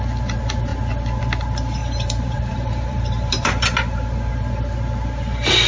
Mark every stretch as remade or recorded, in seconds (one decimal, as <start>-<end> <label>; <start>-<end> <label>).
0.0-1.8 recorded; 1.8-4.3 remade; 4.3-5.7 recorded

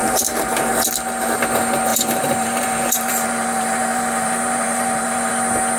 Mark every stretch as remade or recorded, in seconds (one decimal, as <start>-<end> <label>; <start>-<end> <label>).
0.0-0.6 remade; 0.6-1.9 recorded; 1.9-5.3 remade; 5.3-5.8 recorded

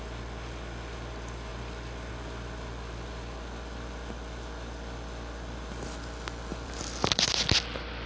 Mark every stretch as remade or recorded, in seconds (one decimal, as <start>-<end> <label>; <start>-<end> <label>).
0.0-1.5 recorded; 1.5-2.1 remade; 2.1-6.5 recorded; 6.5-7.3 remade; 7.3-8.1 recorded

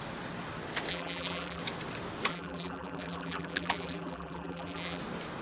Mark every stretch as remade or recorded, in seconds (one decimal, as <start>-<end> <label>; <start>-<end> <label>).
0.0-0.9 recorded; 0.9-1.6 remade; 1.6-2.3 recorded; 2.3-5.0 remade; 5.0-5.4 recorded

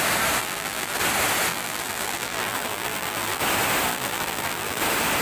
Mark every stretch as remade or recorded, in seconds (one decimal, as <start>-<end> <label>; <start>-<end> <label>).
0.0-0.4 recorded; 0.4-1.0 remade; 1.0-1.5 recorded; 1.5-3.4 remade; 3.4-3.9 recorded; 3.9-4.8 remade; 4.8-5.2 recorded

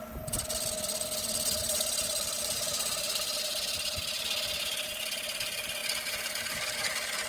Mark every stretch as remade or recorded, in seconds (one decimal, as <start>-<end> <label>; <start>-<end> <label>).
0.0-1.6 recorded; 1.6-4.0 remade; 4.0-7.3 recorded

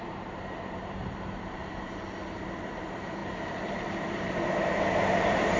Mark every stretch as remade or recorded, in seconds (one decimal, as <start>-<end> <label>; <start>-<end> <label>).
0.0-1.6 remade; 1.6-2.8 recorded; 2.8-5.6 remade